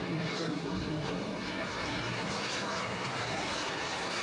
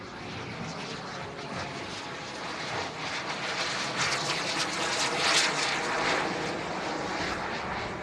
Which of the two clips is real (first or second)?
second